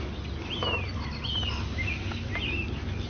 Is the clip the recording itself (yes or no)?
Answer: yes